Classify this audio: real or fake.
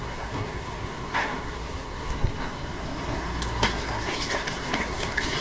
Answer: fake